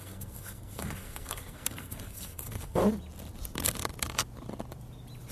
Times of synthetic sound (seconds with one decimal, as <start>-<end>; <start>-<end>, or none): 0.0-2.8